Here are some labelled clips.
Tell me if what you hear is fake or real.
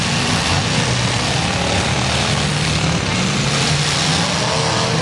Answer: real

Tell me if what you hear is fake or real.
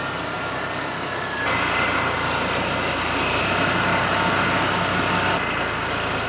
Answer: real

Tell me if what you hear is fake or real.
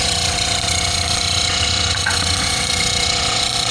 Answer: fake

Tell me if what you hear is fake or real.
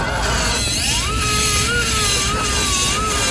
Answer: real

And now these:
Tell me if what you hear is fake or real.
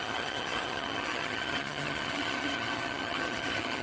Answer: fake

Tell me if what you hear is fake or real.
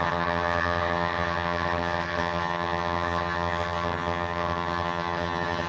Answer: fake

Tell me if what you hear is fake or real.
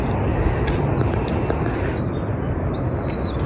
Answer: real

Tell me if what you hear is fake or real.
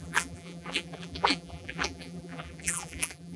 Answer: fake